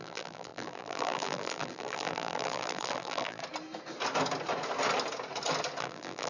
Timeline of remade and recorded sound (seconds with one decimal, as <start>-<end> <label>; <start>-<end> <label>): 0.0-3.4 remade; 3.4-5.8 recorded; 5.8-6.3 remade